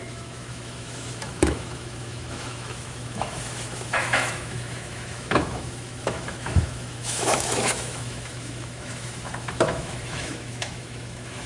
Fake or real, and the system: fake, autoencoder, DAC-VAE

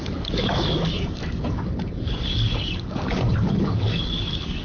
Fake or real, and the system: fake, codec, DAC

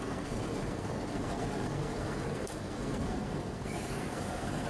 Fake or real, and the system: fake, codec, SNAC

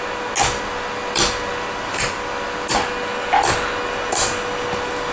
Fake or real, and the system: real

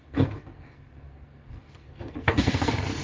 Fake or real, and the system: fake, codec, SNAC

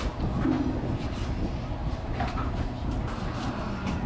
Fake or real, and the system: real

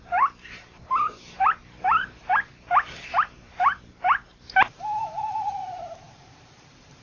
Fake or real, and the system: fake, vocoder, BigVGAN v2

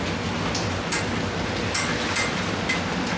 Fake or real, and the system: real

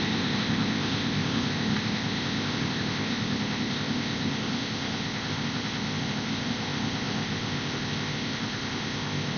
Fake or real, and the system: fake, codec, ZipCodec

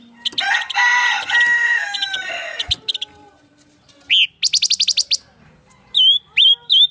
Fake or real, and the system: real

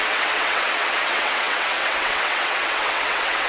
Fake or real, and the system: fake, vocoder, WaveNeXt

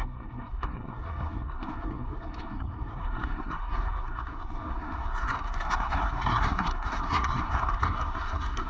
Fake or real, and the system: fake, codec, SNAC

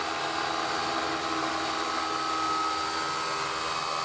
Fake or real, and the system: real